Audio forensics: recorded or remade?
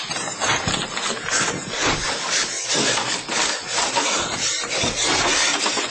recorded